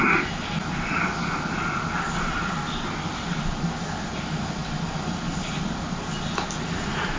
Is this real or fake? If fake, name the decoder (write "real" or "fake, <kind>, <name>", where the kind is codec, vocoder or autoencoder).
real